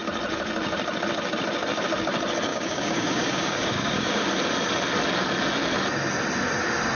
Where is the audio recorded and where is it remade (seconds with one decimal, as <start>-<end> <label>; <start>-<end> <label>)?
0.0-2.5 recorded; 2.5-4.2 remade; 4.2-6.9 recorded